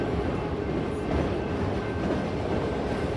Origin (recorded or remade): recorded